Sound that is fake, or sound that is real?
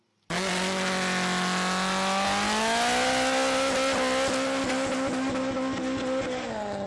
real